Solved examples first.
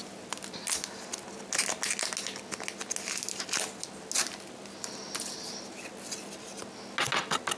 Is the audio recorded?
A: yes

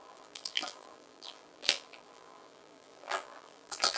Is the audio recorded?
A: no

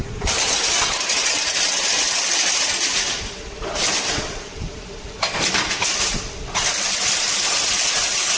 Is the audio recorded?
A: yes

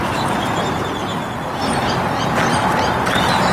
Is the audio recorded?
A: yes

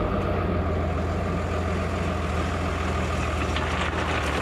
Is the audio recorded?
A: yes